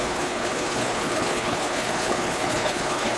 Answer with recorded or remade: remade